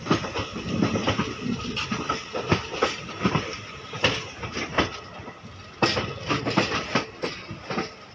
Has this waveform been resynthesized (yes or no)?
no